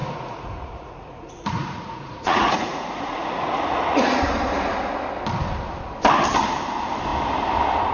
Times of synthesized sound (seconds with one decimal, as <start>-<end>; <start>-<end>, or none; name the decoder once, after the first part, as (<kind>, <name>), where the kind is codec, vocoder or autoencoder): 0.0-4.2 (vocoder, Vocos)